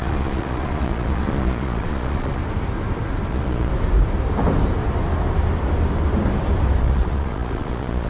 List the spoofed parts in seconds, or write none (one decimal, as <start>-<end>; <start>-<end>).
0.0-2.4; 3.3-3.7; 6.8-8.1